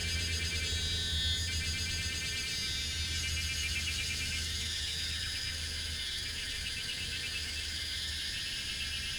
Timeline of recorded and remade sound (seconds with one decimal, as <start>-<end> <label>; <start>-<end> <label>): 0.0-3.6 recorded; 3.6-8.1 remade; 8.1-9.2 recorded